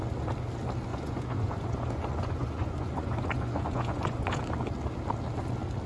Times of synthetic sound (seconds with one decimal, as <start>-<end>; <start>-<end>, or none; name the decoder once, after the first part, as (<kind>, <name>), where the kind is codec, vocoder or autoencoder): 0.9-4.4 (vocoder, Vocos)

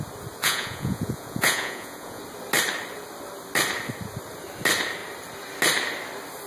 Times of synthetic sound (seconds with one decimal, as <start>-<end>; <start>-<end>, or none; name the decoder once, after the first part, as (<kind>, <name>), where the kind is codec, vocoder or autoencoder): 0.4-2.2 (vocoder, Vocos)

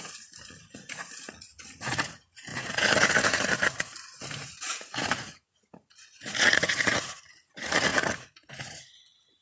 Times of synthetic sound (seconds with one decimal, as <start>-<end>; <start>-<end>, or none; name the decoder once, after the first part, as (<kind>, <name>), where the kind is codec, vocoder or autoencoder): 0.0-9.4 (vocoder, Vocos)

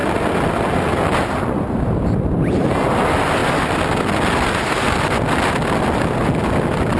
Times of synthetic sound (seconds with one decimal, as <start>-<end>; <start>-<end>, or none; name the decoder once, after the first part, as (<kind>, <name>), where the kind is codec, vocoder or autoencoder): none